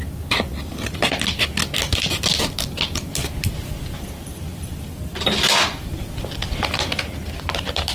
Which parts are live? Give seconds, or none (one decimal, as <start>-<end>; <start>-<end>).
0.0-4.5; 5.4-7.9